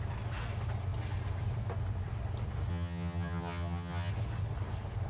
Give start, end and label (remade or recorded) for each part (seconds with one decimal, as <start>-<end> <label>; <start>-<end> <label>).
0.0-2.7 recorded; 2.7-4.1 remade; 4.1-5.1 recorded